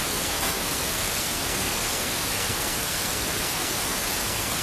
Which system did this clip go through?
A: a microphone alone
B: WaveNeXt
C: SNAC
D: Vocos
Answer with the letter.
C